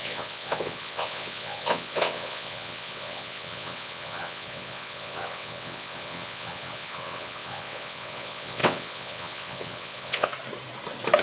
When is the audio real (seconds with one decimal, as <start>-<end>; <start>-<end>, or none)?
10.3-11.2